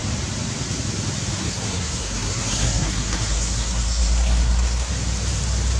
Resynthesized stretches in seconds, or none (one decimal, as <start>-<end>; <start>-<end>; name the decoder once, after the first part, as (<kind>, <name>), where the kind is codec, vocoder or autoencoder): 1.4-4.9 (codec, SNAC)